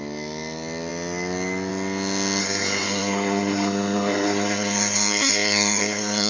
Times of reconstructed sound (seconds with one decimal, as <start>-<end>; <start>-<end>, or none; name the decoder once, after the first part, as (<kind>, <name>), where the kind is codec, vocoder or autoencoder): 2.4-6.3 (codec, SNAC)